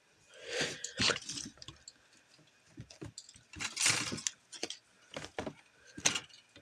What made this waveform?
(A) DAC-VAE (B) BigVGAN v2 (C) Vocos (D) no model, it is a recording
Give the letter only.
D